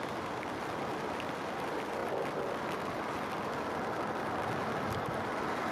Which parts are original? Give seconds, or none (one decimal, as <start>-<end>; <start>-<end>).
0.0-5.7